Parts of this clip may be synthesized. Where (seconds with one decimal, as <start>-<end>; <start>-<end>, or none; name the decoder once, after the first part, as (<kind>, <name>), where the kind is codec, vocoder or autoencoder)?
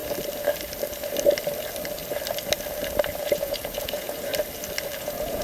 3.2-4.3 (vocoder, Vocos); 5.0-5.4